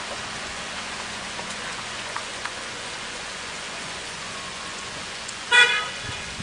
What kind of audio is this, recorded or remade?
remade